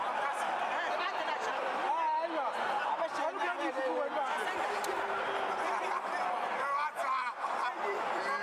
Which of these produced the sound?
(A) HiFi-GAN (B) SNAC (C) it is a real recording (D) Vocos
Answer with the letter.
C